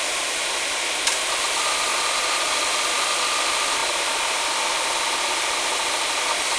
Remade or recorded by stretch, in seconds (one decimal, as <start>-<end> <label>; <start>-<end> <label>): 0.0-1.9 recorded; 1.9-3.1 remade; 3.1-6.6 recorded